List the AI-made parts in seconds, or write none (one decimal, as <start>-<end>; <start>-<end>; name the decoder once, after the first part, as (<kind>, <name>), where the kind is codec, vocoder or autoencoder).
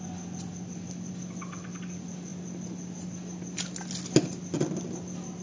none